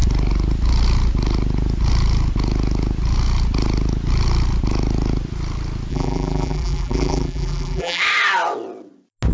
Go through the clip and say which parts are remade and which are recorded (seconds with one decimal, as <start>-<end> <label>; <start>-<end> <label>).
0.0-5.9 recorded; 5.9-8.0 remade; 8.0-9.3 recorded